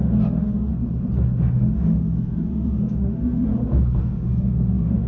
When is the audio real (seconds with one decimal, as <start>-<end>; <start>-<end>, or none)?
0.7-1.5; 3.5-4.0